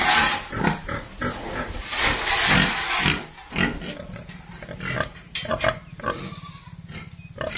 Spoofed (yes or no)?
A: no